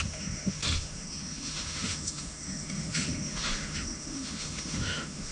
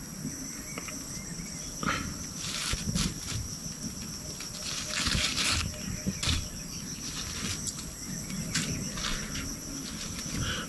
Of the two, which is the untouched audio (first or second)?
second